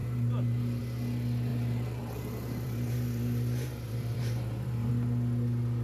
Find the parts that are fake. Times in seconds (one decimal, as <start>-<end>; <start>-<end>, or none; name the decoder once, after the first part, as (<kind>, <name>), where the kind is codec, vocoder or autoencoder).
0.0-0.8 (vocoder, BigVGAN v2); 1.5-4.9